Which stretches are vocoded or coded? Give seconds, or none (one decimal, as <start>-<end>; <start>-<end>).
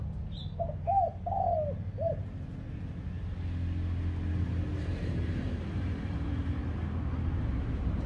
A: 0.0-0.4; 4.8-6.6; 7.4-8.1